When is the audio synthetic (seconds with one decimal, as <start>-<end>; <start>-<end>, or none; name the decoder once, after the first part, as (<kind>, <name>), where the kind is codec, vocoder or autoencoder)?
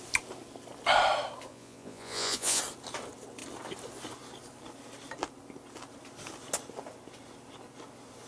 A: 1.5-2.6 (vocoder, Vocos)